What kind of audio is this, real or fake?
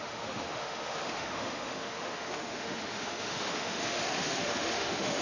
fake